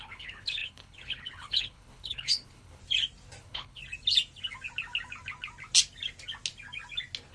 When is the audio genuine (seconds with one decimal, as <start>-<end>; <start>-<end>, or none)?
2.8-3.4; 3.8-7.3